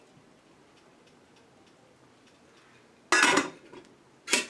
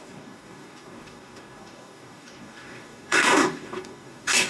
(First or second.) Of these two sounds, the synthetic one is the second